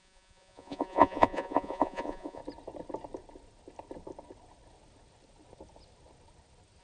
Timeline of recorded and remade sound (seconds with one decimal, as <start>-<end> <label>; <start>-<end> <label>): 0.0-2.4 remade; 2.4-6.8 recorded